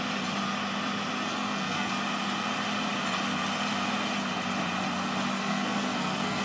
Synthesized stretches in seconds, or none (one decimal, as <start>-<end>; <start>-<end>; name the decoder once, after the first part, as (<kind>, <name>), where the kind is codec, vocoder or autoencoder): 1.3-1.9 (codec, SNAC); 5.3-6.4